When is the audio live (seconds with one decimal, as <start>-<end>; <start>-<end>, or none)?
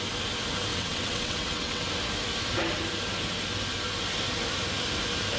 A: 0.0-0.7; 1.9-5.4